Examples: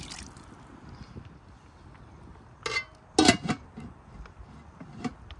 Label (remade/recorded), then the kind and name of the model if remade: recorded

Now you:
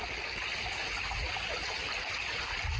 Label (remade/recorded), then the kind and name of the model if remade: recorded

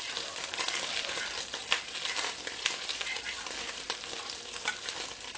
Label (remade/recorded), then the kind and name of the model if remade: recorded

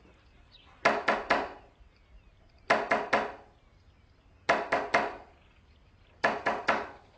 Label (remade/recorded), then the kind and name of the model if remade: recorded